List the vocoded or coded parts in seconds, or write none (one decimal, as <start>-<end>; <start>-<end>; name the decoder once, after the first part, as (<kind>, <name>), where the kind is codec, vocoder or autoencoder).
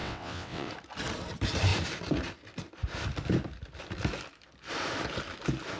0.0-0.7 (vocoder, WaveNeXt)